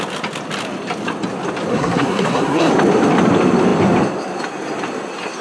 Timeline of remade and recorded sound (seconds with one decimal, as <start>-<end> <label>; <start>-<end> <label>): 0.0-1.7 recorded; 1.7-2.7 remade; 2.7-5.4 recorded